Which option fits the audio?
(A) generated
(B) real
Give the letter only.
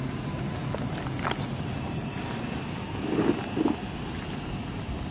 B